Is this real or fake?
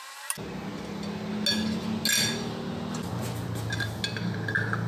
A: real